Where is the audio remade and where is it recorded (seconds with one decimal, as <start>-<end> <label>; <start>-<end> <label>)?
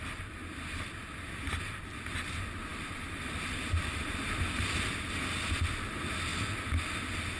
0.0-0.4 recorded; 0.4-1.2 remade; 1.2-2.7 recorded; 2.7-5.2 remade; 5.2-7.4 recorded